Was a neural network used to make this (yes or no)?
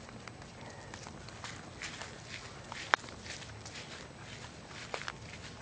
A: no